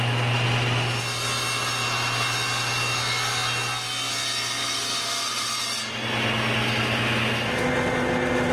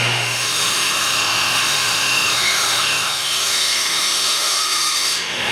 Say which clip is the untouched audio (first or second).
first